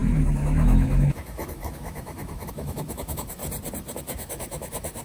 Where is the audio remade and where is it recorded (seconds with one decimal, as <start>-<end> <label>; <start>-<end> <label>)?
0.0-3.4 remade; 3.4-4.0 recorded; 4.0-5.0 remade